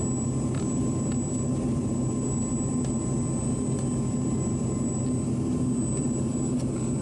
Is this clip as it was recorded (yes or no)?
yes